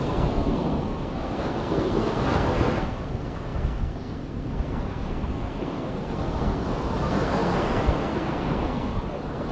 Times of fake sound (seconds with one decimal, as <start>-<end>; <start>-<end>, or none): 0.0-9.5